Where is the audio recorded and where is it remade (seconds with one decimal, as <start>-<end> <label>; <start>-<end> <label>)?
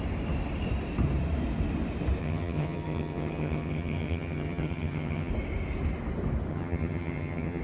0.0-2.2 recorded; 2.2-5.3 remade; 5.3-6.5 recorded; 6.5-7.6 remade